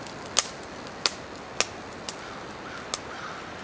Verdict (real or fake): real